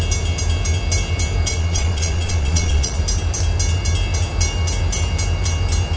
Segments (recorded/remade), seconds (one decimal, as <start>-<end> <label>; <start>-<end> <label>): 0.0-1.5 recorded; 1.5-3.0 remade; 3.0-6.0 recorded